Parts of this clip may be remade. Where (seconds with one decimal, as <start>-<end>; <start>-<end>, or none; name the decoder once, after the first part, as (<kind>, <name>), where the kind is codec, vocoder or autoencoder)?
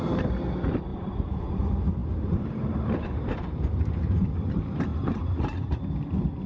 0.9-1.6 (vocoder, BigVGAN v2); 2.0-3.3; 4.9-5.8